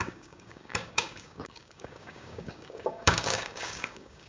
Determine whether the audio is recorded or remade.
remade